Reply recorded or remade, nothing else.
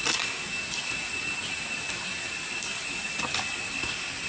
recorded